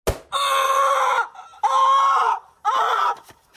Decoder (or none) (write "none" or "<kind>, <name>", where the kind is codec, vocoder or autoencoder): none